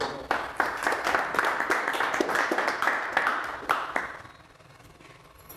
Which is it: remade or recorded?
recorded